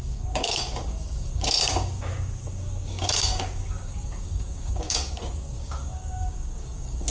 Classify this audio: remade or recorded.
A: remade